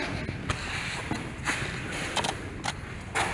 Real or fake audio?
real